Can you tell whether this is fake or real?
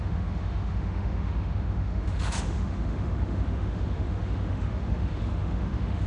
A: fake